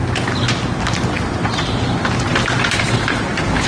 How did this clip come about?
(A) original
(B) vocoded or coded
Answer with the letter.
A